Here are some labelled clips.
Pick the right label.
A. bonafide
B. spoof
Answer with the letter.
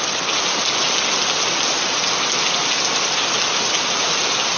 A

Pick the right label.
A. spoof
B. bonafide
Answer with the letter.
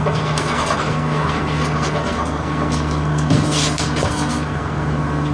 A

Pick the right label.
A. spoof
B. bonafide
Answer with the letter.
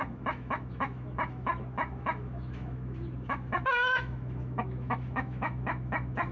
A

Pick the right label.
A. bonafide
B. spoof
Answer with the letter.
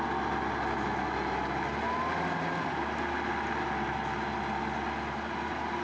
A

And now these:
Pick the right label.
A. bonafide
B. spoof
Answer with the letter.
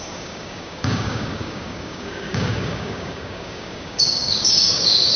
B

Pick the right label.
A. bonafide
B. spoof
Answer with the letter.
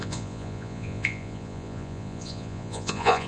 B